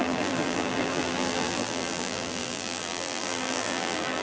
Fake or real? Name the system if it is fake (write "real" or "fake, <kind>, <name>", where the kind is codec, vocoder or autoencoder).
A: fake, vocoder, BigVGAN v2